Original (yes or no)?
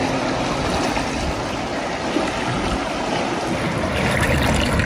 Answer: yes